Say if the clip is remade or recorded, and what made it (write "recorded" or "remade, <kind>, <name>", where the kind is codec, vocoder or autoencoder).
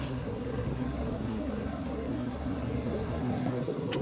remade, codec, SNAC